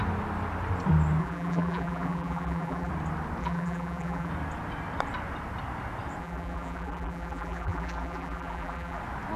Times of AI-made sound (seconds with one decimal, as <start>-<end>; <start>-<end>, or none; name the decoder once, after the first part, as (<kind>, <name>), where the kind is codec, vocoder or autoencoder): 1.2-2.9 (vocoder, BigVGAN v2); 3.4-4.3; 6.2-9.0